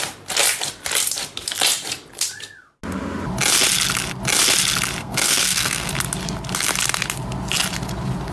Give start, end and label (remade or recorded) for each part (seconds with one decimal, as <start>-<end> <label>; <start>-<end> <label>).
0.0-5.0 recorded; 5.0-5.9 remade; 5.9-8.3 recorded